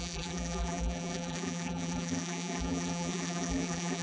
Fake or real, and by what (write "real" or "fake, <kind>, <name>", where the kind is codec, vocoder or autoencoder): fake, vocoder, BigVGAN v2